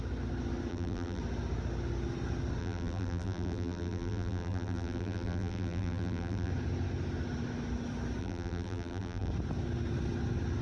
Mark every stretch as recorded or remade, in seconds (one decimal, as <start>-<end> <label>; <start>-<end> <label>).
0.0-0.7 recorded; 0.7-1.2 remade; 1.2-2.6 recorded; 2.6-6.5 remade; 6.5-8.2 recorded; 8.2-9.3 remade; 9.3-10.6 recorded